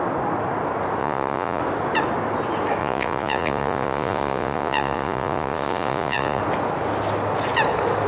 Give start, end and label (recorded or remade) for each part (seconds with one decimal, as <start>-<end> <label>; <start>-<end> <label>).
0.0-1.0 recorded; 1.0-1.6 remade; 1.6-2.8 recorded; 2.8-6.4 remade; 6.4-8.1 recorded